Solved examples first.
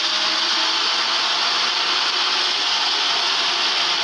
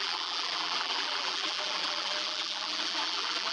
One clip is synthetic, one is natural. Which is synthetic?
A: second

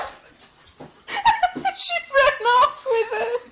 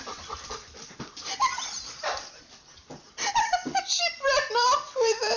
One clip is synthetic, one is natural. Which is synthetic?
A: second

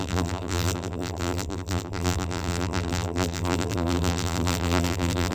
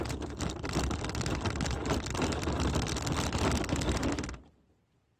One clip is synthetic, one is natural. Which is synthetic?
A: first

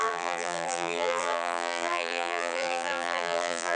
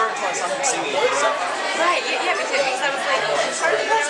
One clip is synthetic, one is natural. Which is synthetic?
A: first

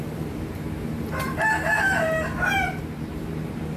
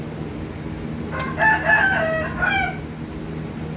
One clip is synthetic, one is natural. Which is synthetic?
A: first